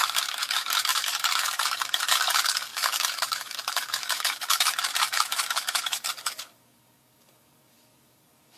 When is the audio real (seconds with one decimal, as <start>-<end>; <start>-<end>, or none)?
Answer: none